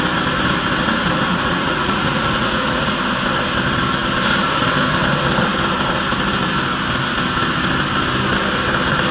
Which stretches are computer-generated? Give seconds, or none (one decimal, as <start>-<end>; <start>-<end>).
1.3-3.0